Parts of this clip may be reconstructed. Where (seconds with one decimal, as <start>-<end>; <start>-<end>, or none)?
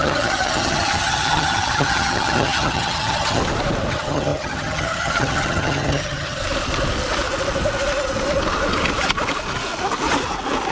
0.0-3.4; 3.9-6.4